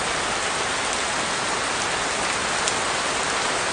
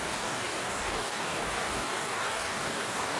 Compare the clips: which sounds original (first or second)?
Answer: first